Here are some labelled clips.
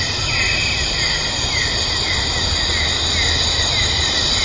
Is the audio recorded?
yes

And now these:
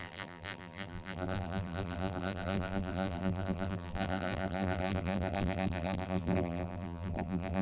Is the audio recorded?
no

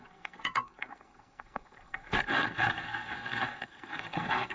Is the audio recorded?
no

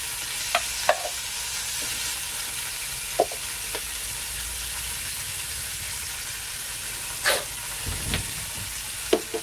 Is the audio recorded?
yes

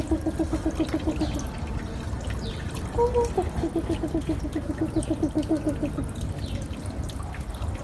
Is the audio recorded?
yes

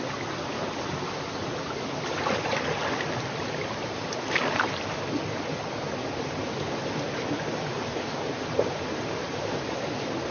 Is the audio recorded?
yes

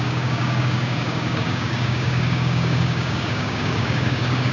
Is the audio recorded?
no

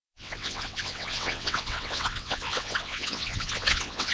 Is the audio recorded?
no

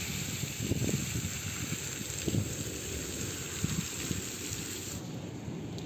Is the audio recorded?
yes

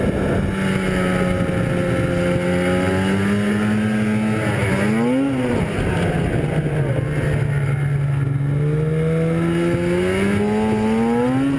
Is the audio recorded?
yes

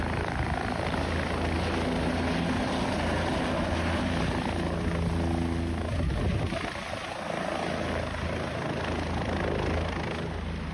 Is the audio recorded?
yes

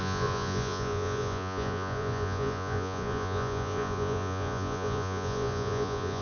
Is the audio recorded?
no